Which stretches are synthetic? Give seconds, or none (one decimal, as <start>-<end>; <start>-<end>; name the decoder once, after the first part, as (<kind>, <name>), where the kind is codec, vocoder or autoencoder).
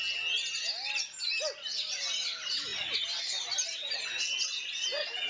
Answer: none